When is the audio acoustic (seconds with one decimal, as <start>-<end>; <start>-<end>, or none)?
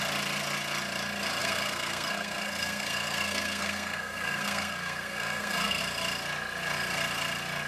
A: 0.0-1.4; 5.8-7.7